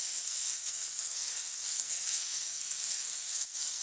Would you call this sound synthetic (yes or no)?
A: yes